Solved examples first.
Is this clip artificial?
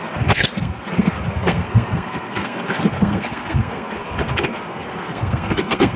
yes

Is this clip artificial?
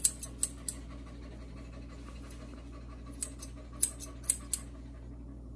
no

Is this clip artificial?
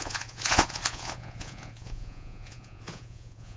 yes